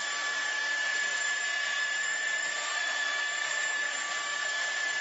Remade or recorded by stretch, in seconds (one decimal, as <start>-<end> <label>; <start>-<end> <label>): 0.0-0.9 recorded; 0.9-3.1 remade; 3.1-5.0 recorded